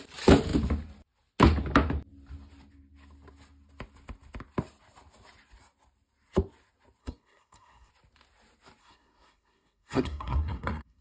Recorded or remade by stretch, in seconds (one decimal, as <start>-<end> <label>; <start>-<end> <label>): 0.0-7.0 recorded; 7.0-7.9 remade; 7.9-8.8 recorded; 8.8-11.0 remade